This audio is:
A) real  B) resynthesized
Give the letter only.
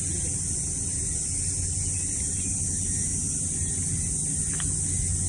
A